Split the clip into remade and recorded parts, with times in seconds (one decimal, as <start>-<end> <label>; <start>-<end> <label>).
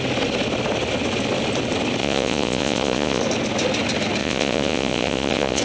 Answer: 0.0-2.0 recorded; 2.0-3.2 remade; 3.2-4.2 recorded; 4.2-5.6 remade